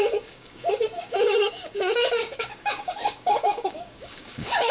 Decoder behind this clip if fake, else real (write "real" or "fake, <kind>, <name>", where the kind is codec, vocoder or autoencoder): fake, codec, DAC